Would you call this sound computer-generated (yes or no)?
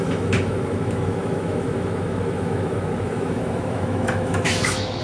yes